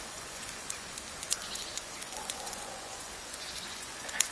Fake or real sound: fake